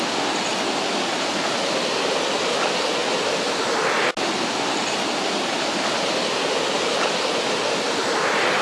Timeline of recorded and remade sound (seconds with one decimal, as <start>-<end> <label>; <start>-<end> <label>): 0.0-8.6 recorded